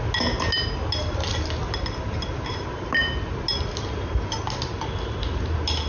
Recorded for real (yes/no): yes